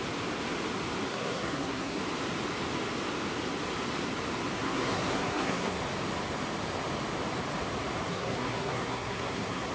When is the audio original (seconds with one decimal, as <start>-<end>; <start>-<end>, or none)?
0.0-1.1; 2.0-4.5; 5.8-8.1